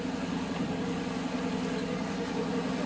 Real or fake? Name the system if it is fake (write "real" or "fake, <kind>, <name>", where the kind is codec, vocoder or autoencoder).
real